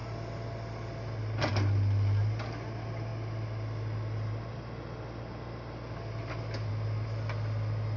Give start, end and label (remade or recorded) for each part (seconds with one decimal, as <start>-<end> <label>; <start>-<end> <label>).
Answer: 0.0-8.0 recorded